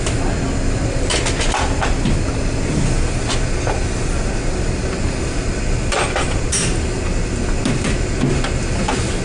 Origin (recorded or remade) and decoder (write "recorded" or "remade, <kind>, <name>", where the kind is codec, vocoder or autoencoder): recorded